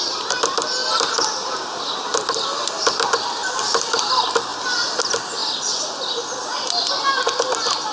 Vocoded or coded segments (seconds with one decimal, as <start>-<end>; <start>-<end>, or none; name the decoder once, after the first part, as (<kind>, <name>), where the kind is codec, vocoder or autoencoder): none